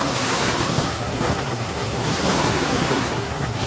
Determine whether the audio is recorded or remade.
remade